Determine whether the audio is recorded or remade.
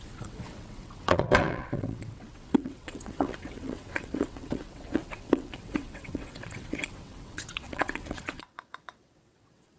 remade